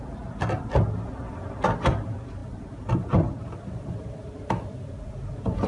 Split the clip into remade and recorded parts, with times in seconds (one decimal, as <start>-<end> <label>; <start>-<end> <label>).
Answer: 0.0-2.4 recorded; 2.4-5.7 remade